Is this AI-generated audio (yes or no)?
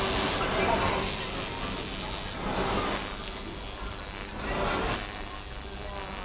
no